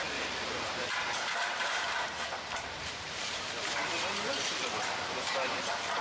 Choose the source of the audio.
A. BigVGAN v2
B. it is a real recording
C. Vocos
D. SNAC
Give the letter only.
A